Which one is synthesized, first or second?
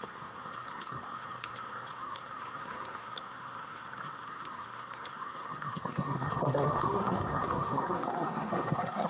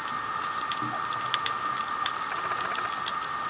first